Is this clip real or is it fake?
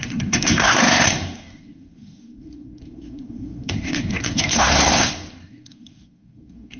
fake